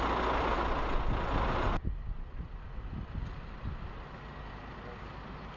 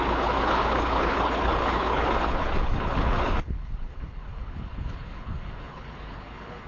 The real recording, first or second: first